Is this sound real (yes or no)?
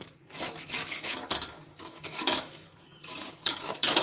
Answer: no